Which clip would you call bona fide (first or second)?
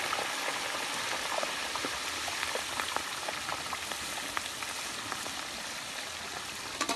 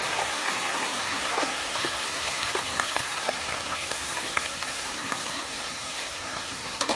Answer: first